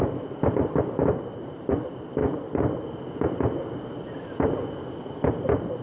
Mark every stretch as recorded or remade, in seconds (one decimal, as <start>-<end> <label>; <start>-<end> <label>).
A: 0.0-5.8 recorded